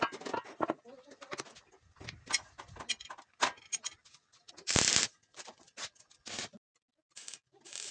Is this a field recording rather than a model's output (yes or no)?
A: yes